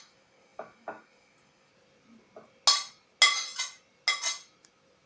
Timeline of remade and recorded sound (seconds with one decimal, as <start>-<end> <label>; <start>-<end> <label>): 0.0-1.7 remade; 1.7-5.1 recorded